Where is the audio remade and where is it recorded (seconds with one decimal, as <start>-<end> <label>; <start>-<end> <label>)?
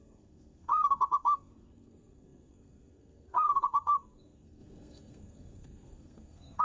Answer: 0.0-6.6 remade